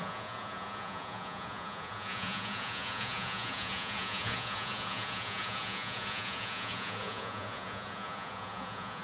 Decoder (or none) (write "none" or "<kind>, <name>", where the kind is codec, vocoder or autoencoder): vocoder, Vocos